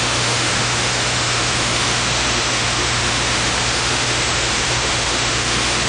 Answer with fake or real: fake